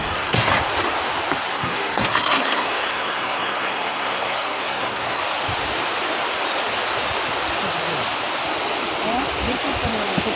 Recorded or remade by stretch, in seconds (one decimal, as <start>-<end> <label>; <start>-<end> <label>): 0.0-0.5 remade; 0.5-1.5 recorded; 1.5-5.2 remade; 5.2-10.4 recorded